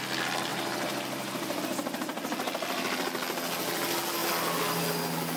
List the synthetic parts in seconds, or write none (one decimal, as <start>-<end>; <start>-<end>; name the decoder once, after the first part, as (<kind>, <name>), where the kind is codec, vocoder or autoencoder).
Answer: 0.5-1.6 (vocoder, BigVGAN v2)